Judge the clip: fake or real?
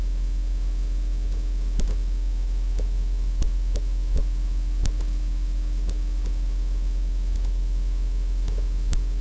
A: fake